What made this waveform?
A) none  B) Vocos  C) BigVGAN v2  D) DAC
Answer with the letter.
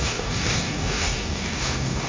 D